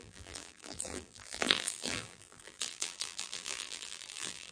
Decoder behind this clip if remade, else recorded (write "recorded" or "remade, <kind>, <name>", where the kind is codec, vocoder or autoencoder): remade, vocoder, BigVGAN v2